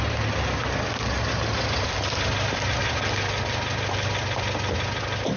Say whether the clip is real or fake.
real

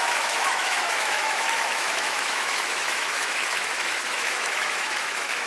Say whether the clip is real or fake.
fake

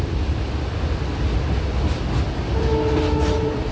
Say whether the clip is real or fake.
real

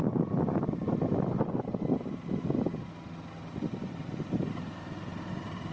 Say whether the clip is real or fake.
real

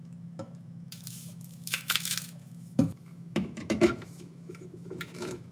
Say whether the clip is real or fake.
fake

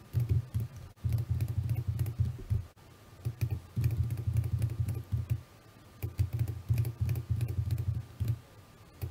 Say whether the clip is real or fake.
real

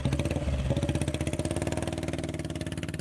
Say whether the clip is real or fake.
real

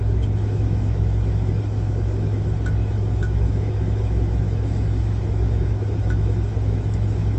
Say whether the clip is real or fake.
fake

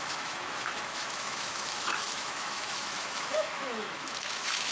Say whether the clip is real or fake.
fake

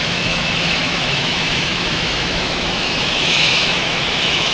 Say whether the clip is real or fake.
fake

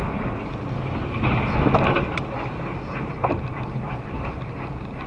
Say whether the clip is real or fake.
real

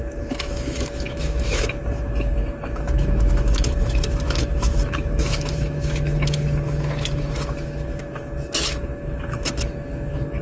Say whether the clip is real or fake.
fake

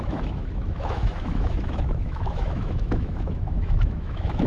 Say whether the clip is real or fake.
fake